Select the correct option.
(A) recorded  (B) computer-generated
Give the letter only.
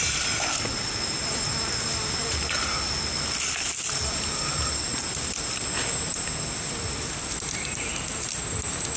A